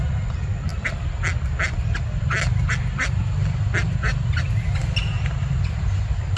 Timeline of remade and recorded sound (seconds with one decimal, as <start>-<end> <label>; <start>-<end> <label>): 0.0-6.4 recorded